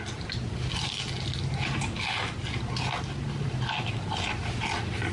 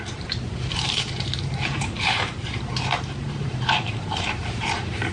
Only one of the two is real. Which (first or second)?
first